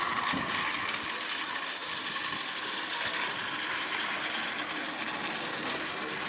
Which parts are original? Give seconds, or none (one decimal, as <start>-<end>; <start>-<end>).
0.0-6.3